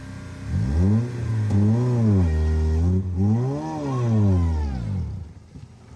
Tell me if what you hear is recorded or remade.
recorded